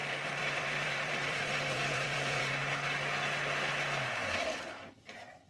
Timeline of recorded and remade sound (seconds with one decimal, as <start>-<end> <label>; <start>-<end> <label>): 0.0-2.4 remade; 2.4-4.2 recorded; 4.2-5.5 remade